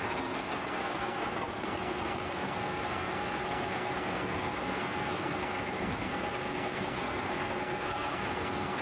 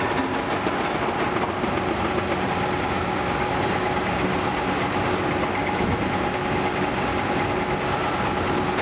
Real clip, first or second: second